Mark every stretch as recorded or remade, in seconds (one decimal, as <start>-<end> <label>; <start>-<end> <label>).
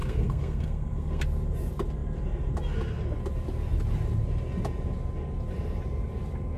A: 0.0-1.2 remade; 1.2-6.6 recorded